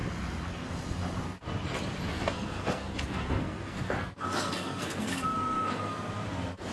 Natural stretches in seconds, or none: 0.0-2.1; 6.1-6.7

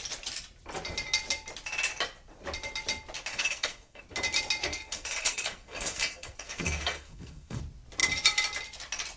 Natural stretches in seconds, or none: 0.0-3.3; 4.0-4.6; 7.6-9.2

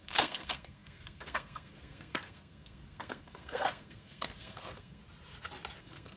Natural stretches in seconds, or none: 5.0-5.8

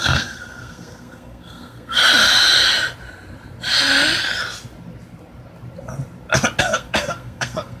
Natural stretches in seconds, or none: 2.0-6.6

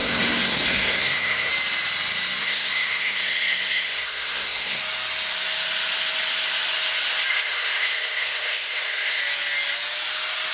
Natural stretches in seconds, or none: 1.5-2.4; 4.8-7.3; 9.2-10.5

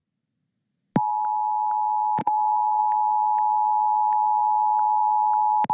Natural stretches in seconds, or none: 0.0-2.2; 2.8-5.7

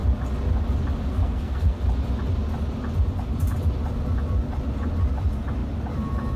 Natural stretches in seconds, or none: 0.0-1.1; 1.8-6.4

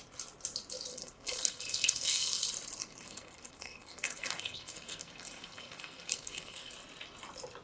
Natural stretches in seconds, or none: 0.0-0.9; 2.4-2.8; 6.7-7.6